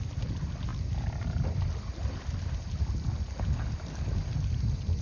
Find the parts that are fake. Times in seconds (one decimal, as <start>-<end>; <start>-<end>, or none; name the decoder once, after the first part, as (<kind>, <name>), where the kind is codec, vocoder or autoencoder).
none